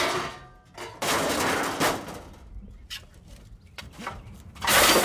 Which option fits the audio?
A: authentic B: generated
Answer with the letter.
A